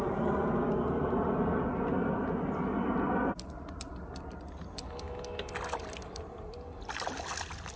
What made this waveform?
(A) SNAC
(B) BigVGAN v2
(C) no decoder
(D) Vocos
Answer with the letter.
C